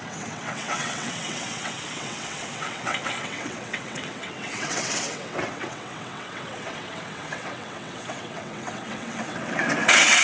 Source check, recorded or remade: remade